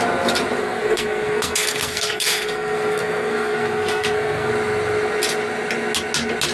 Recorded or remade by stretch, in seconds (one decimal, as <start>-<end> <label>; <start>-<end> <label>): 0.0-0.6 recorded; 0.6-4.5 remade; 4.5-6.5 recorded